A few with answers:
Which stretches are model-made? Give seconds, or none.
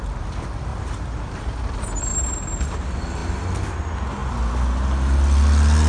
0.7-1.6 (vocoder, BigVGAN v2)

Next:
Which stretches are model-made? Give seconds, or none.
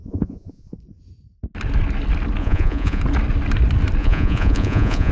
0.0-0.8 (vocoder, Vocos); 2.4-3.0; 4.0-5.1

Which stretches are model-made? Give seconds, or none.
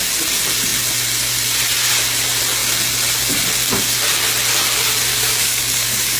5.1-6.2 (codec, DAC)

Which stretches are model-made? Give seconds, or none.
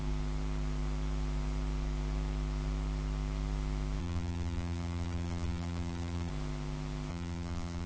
4.0-6.3 (vocoder, BigVGAN v2); 7.1-7.9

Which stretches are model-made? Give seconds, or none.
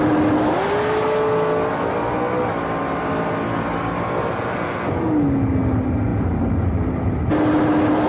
none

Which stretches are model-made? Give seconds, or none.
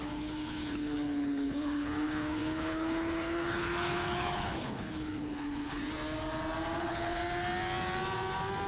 0.0-5.8 (codec, HILCodec); 6.8-7.2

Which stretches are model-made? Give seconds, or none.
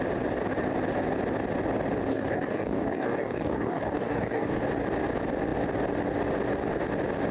2.1-4.6 (codec, DAC)